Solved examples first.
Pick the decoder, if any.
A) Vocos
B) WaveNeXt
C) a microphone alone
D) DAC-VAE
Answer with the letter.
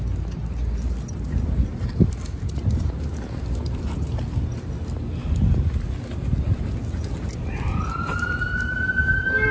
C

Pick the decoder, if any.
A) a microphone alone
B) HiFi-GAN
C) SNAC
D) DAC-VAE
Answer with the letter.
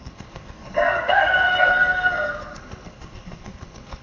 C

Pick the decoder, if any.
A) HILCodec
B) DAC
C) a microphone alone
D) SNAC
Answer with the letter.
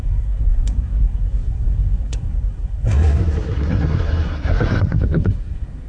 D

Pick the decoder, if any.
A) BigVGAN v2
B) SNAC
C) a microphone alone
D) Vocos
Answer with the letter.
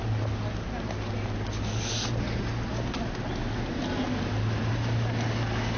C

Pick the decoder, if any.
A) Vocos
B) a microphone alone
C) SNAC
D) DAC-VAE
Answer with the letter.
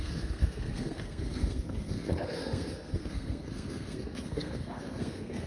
C